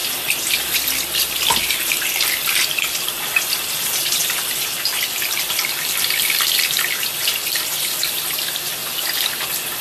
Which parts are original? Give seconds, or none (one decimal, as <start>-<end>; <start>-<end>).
0.0-4.1; 8.8-9.8